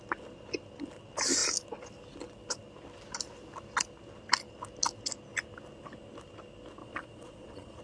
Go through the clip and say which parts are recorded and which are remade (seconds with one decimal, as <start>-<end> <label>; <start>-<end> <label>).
0.0-6.8 recorded; 6.8-7.8 remade